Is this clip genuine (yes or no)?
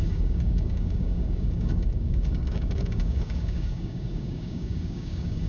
no